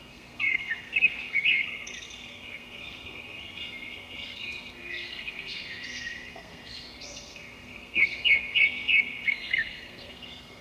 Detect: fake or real fake